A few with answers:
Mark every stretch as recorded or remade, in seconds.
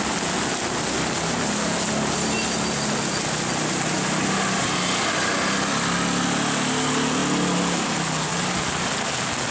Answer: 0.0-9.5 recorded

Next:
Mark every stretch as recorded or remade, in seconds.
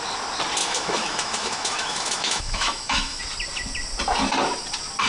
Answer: 0.0-0.6 recorded; 0.6-3.2 remade; 3.2-5.1 recorded